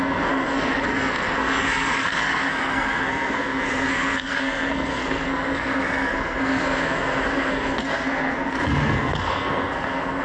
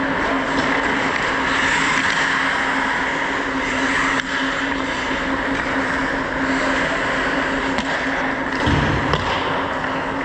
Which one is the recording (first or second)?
second